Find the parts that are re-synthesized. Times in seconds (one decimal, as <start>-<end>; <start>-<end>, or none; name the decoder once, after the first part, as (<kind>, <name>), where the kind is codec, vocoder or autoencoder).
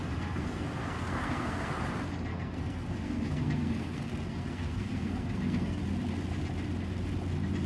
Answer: 0.0-1.7 (codec, SNAC); 2.3-5.8